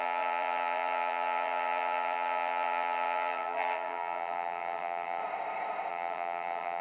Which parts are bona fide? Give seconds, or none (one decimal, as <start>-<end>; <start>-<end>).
5.2-5.9